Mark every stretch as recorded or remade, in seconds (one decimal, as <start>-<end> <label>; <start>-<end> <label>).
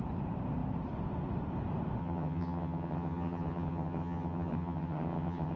0.0-2.0 recorded; 2.0-5.6 remade